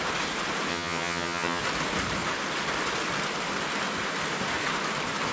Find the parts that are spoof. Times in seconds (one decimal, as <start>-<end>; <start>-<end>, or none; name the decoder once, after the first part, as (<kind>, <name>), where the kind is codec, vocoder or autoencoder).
0.7-1.6 (vocoder, HiFi-GAN)